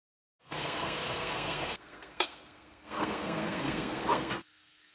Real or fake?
fake